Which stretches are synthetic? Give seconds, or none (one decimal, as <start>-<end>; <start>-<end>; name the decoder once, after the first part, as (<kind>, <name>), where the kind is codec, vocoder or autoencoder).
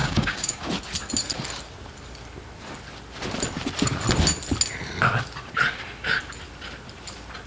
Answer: 0.0-0.6 (codec, DAC)